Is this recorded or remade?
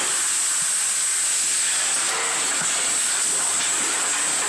recorded